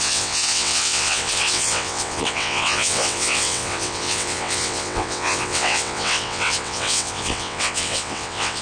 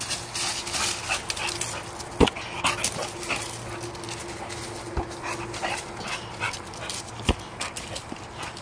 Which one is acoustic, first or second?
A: second